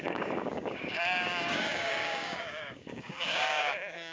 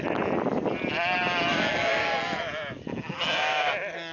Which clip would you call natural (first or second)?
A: second